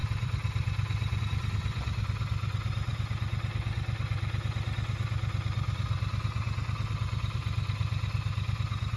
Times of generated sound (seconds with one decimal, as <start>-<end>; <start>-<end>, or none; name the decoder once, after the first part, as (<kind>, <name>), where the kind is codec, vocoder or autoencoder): none